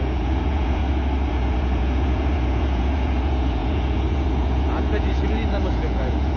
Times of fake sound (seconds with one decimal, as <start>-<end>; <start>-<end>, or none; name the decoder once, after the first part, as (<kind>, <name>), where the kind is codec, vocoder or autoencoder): 0.0-0.8 (vocoder, Vocos); 1.3-6.4